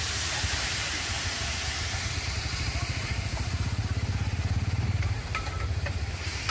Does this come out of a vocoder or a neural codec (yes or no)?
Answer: yes